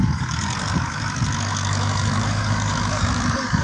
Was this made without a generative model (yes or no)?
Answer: no